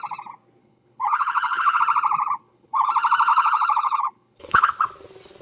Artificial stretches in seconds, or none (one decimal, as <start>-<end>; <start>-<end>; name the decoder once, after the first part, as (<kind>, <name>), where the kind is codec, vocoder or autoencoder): 0.6-1.8 (codec, HILCodec); 2.4-2.9; 3.3-4.7